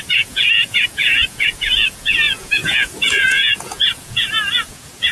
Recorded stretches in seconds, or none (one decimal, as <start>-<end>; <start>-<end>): none